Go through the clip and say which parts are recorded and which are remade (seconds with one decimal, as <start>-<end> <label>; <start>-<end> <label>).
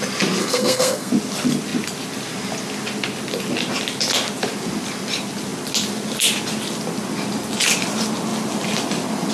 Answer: 0.0-0.4 recorded; 0.4-1.1 remade; 1.1-9.3 recorded